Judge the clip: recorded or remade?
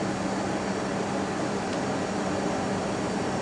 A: recorded